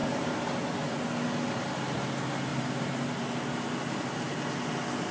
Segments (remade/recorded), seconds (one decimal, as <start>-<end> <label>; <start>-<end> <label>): 0.0-0.7 remade; 0.7-2.5 recorded; 2.5-3.2 remade; 3.2-5.1 recorded